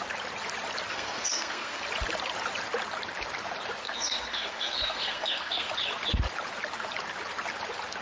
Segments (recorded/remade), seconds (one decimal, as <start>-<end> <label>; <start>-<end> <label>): 0.0-0.9 recorded; 0.9-1.8 remade; 1.8-3.8 recorded; 3.8-5.7 remade; 5.7-8.0 recorded